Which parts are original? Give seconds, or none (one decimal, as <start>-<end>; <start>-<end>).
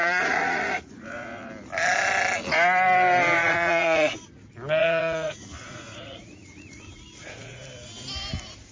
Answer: 1.5-3.4; 4.2-4.8; 7.6-8.7